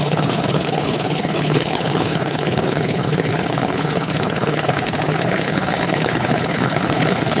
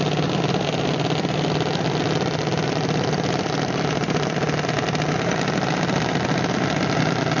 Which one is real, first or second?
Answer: second